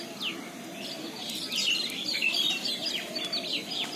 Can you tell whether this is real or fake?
fake